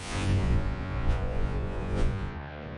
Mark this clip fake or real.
fake